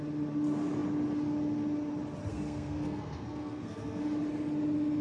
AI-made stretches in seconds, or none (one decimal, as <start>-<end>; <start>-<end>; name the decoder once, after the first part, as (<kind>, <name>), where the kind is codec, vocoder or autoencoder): 2.3-4.0 (codec, SNAC)